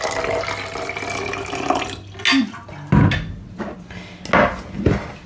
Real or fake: real